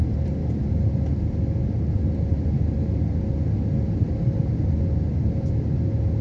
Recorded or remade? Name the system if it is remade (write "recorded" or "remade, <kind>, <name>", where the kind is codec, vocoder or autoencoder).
recorded